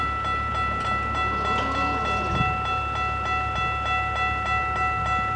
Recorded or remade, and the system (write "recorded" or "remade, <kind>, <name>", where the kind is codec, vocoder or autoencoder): recorded